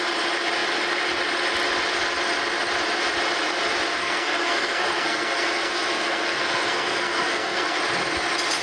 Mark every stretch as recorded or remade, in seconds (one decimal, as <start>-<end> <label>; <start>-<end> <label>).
0.0-4.0 recorded; 4.0-7.8 remade; 7.8-8.6 recorded